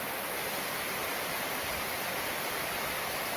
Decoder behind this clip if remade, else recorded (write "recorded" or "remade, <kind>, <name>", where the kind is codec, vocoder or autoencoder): recorded